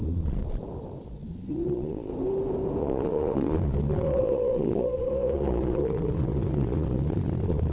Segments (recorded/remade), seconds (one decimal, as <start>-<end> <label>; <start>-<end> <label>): 0.0-0.4 remade; 0.4-1.5 recorded; 1.5-2.1 remade; 2.1-2.8 recorded; 2.8-7.7 remade